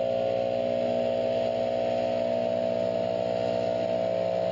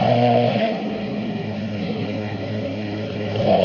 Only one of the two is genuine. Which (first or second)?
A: first